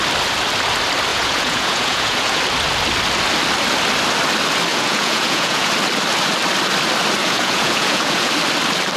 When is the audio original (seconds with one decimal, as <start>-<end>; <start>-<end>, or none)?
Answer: 0.0-1.1; 2.4-4.7; 5.7-7.2; 8.3-9.0